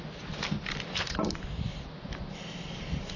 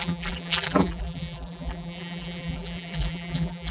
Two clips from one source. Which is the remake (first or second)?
second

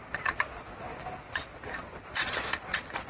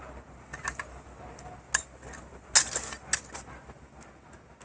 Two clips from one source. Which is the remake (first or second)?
first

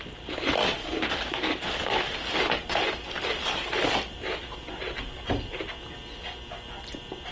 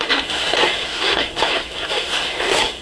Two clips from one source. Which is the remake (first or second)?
second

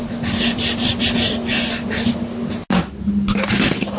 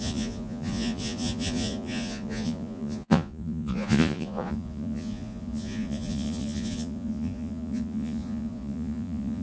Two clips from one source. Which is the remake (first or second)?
second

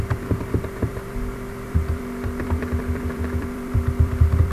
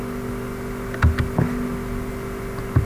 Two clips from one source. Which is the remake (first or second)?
first